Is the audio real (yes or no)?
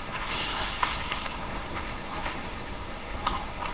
no